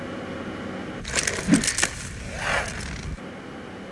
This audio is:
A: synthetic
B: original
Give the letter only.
B